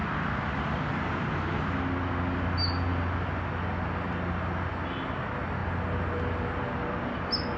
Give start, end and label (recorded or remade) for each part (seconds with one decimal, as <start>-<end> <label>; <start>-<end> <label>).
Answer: 0.0-7.6 recorded